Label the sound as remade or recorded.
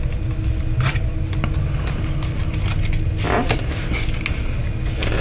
recorded